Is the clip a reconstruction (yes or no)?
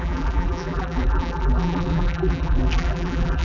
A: yes